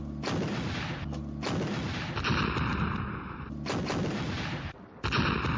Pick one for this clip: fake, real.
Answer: real